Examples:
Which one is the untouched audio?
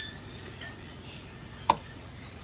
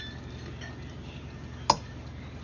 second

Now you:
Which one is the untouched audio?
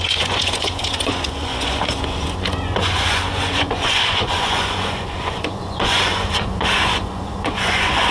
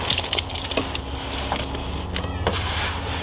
second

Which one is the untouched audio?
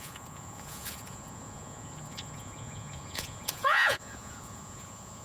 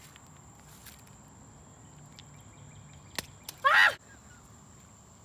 second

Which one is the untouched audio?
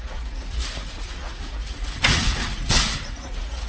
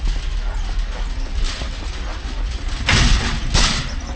second